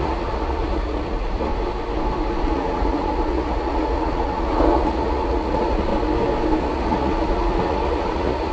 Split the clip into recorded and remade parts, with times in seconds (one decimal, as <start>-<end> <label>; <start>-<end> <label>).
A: 0.0-1.5 remade; 1.5-2.4 recorded; 2.4-5.9 remade; 5.9-6.6 recorded; 6.6-8.5 remade